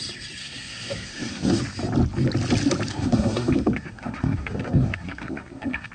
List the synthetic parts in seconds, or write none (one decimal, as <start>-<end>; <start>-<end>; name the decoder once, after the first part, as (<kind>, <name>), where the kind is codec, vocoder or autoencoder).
0.4-1.6 (codec, SNAC); 2.9-5.9